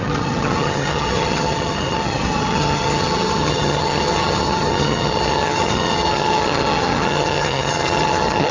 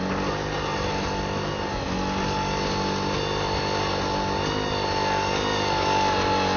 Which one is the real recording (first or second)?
second